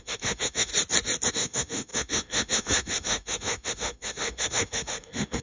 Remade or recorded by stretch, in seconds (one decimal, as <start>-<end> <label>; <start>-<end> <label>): 0.0-0.7 remade; 0.7-1.3 recorded; 1.3-5.4 remade

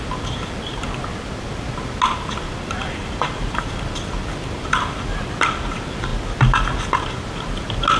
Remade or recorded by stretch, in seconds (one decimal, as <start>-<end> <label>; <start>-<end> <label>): 0.0-8.0 recorded